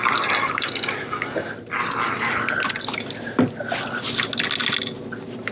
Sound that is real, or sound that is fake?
real